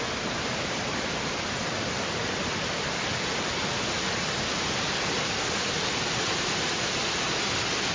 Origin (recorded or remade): recorded